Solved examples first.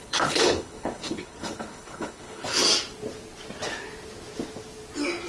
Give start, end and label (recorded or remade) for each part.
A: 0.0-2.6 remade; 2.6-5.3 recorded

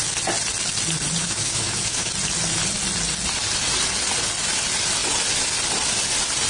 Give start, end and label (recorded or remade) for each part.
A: 0.0-1.2 recorded; 1.2-2.1 remade; 2.1-6.5 recorded

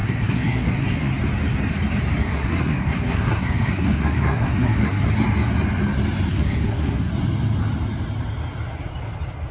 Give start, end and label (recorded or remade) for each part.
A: 0.0-1.1 remade; 1.1-2.2 recorded; 2.2-5.1 remade; 5.1-6.3 recorded; 6.3-7.1 remade; 7.1-9.5 recorded

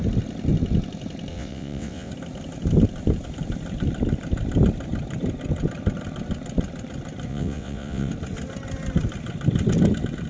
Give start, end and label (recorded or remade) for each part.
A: 0.0-1.3 recorded; 1.3-2.1 remade; 2.1-7.3 recorded; 7.3-8.1 remade; 8.1-10.3 recorded

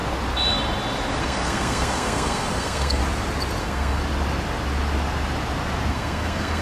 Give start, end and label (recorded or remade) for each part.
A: 0.0-1.2 recorded; 1.2-3.0 remade; 3.0-3.6 recorded; 3.6-4.0 remade; 4.0-5.9 recorded; 5.9-6.6 remade

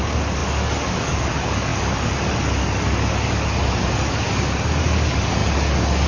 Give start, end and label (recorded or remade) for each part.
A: 0.0-6.1 remade

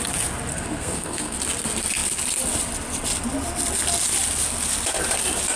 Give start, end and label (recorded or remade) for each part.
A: 0.0-0.5 recorded; 0.5-1.4 remade; 1.4-5.6 recorded